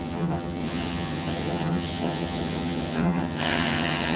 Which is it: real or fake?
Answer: fake